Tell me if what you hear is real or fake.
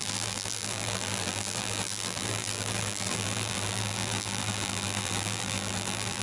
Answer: fake